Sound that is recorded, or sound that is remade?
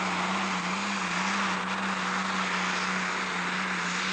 recorded